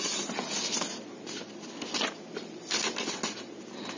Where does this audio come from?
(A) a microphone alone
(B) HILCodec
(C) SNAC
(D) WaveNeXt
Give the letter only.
A